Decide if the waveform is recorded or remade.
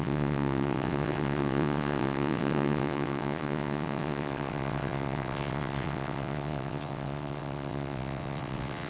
remade